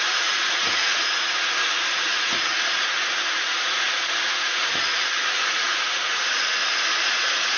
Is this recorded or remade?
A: remade